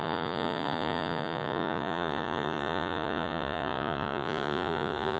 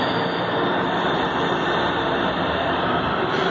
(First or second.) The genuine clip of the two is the second